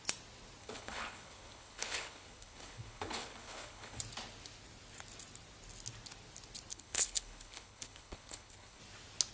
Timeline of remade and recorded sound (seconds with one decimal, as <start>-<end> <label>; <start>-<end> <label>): 0.0-0.6 recorded; 0.6-4.0 remade; 4.0-6.7 recorded; 6.7-8.8 remade; 8.8-9.3 recorded